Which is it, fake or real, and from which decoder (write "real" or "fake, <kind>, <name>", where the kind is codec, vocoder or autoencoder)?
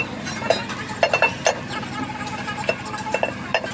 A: real